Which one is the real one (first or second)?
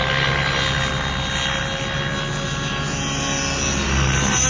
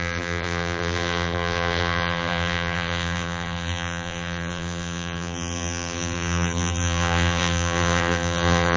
first